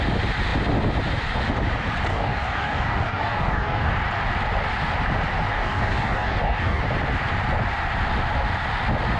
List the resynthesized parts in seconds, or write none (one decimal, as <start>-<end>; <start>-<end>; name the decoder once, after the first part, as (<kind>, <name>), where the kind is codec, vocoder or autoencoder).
2.1-3.9 (codec, DAC); 5.5-6.8